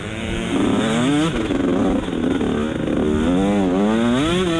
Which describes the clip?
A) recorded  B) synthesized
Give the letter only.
A